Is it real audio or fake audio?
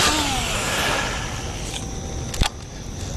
real